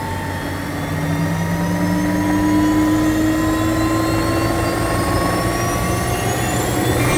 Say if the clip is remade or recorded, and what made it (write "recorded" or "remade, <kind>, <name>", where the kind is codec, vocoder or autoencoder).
recorded